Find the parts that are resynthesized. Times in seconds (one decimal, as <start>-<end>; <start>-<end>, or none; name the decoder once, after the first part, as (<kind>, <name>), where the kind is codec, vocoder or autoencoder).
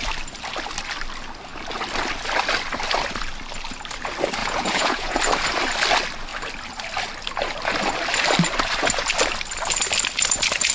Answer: 4.4-5.2 (vocoder, Vocos)